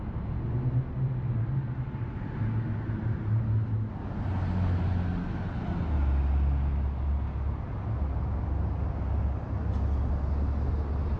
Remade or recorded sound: recorded